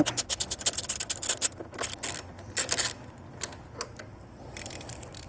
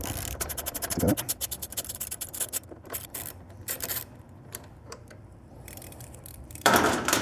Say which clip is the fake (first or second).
second